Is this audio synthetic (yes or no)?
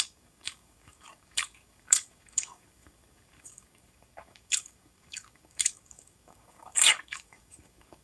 yes